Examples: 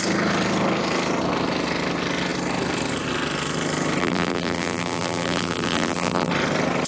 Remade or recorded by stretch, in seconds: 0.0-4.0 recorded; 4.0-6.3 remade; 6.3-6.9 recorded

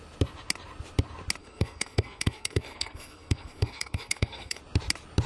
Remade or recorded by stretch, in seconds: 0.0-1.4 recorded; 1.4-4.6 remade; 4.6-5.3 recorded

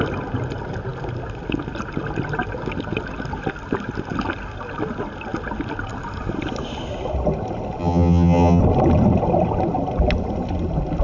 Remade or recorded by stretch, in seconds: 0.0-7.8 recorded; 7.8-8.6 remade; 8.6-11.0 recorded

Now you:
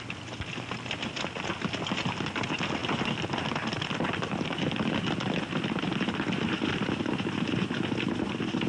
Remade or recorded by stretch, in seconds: 0.0-8.7 recorded

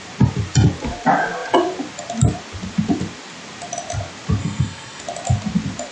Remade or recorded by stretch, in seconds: 0.0-4.4 recorded; 4.4-5.0 remade; 5.0-5.9 recorded

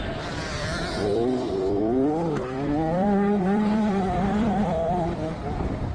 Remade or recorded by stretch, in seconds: 0.0-5.9 remade